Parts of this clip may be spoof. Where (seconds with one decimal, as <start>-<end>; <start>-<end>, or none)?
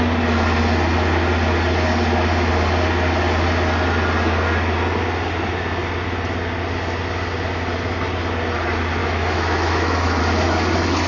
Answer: 9.0-10.2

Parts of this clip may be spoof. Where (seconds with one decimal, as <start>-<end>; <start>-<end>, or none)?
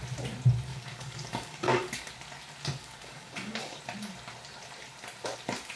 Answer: 0.7-2.1; 2.8-3.8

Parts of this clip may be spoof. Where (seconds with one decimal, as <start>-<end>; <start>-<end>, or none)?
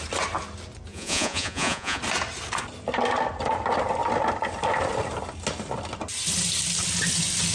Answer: 0.9-2.0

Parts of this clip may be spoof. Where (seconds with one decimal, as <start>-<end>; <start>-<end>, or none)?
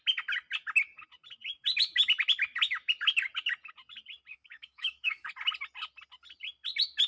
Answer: 4.3-5.3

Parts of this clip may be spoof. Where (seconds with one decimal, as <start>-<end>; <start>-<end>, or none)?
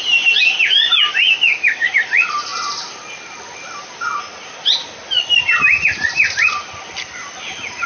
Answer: 1.1-1.9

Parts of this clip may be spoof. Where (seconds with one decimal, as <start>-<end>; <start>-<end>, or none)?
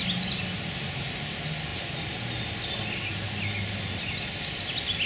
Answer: none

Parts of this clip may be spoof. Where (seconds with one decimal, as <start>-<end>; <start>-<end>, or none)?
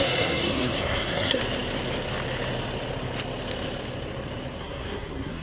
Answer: 0.0-1.4; 4.6-5.4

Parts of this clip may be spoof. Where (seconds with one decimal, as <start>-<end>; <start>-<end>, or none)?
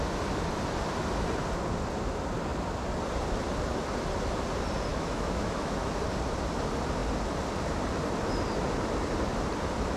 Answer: 4.9-6.0